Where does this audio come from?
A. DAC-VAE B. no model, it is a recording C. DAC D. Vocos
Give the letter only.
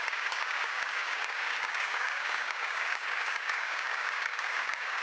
C